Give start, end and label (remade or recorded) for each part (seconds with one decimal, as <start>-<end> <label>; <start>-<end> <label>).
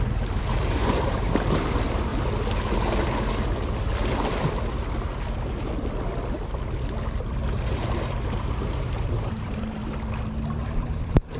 0.0-2.1 remade; 2.1-7.2 recorded; 7.2-9.8 remade; 9.8-10.6 recorded; 10.6-11.4 remade